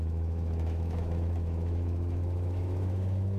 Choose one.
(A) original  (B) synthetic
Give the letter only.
B